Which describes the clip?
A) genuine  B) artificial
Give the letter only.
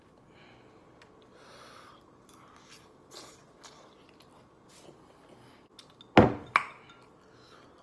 A